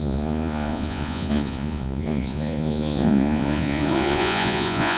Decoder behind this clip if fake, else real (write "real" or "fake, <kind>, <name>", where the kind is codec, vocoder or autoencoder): fake, vocoder, Vocos